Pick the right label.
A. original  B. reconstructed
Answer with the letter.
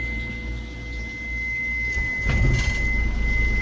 A